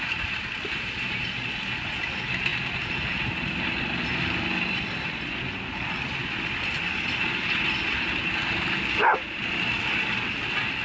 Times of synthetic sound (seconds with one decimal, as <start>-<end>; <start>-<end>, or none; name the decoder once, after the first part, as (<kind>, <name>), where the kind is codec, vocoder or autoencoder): none